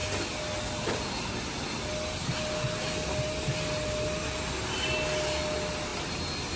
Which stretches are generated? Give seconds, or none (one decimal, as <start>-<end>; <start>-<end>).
none